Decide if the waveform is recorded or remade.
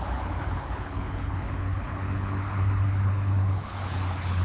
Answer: remade